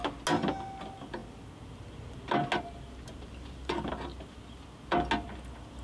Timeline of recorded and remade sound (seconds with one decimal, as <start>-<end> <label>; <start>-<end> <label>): 0.0-5.8 recorded